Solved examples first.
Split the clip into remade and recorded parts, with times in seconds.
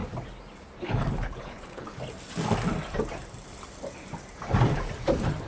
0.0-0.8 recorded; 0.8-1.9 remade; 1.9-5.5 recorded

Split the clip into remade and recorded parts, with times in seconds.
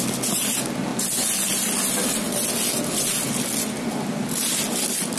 0.0-5.2 recorded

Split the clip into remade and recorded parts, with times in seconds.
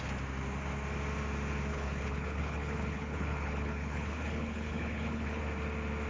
0.0-1.7 recorded; 1.7-5.4 remade; 5.4-6.1 recorded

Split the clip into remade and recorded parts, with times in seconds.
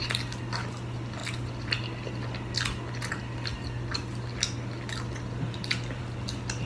0.0-6.7 recorded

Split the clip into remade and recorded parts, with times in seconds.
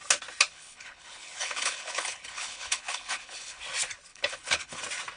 0.0-0.5 recorded; 0.5-3.6 remade; 3.6-4.1 recorded; 4.1-4.8 remade; 4.8-5.2 recorded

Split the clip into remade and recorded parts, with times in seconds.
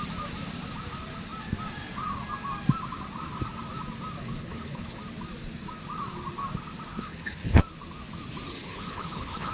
0.0-4.2 recorded; 4.2-5.0 remade; 5.0-6.9 recorded; 6.9-7.6 remade; 7.6-8.5 recorded; 8.5-9.5 remade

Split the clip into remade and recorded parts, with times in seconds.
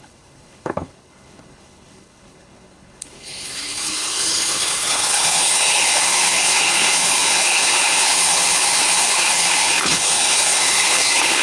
0.0-11.4 remade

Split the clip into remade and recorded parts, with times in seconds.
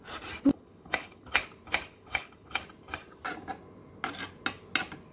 0.0-0.5 recorded; 0.5-1.4 remade; 1.4-1.9 recorded; 1.9-2.6 remade; 2.6-5.1 recorded